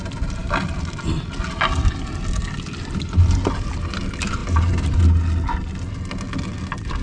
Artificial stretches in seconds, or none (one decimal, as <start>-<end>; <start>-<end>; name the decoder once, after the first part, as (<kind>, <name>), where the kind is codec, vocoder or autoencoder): 4.4-5.0 (vocoder, BigVGAN v2)